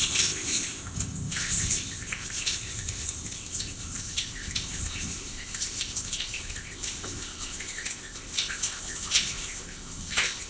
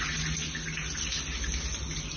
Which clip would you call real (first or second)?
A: second